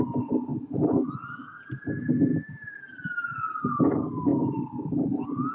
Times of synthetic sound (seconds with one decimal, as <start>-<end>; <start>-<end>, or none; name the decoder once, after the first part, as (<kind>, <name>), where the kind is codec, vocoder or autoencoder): none